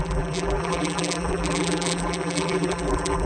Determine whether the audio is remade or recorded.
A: remade